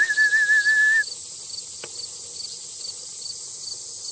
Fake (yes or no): no